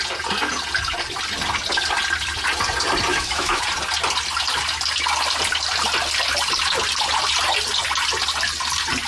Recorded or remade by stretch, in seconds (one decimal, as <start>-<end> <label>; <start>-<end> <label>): 0.0-3.1 recorded; 3.1-3.6 remade; 3.6-9.1 recorded